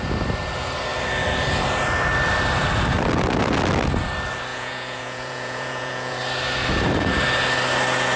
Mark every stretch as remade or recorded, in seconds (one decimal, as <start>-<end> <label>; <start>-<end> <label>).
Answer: 0.0-4.5 recorded; 4.5-6.2 remade; 6.2-8.2 recorded